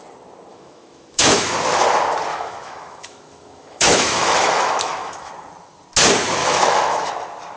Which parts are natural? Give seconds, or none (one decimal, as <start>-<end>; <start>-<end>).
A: 0.0-0.5; 1.5-2.3; 5.3-6.4; 7.1-7.6